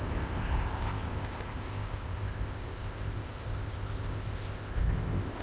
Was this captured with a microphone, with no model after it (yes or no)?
no